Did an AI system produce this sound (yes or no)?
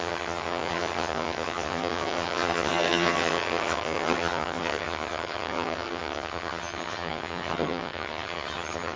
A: yes